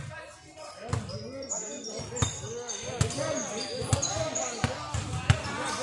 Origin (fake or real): real